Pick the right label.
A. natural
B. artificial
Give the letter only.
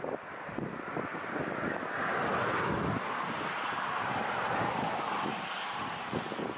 A